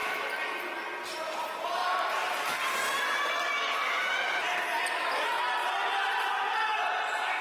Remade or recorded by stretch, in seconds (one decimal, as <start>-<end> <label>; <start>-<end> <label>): 0.0-7.4 recorded